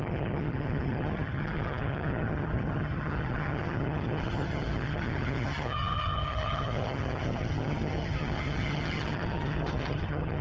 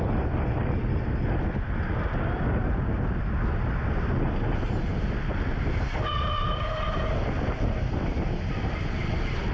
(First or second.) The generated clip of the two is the first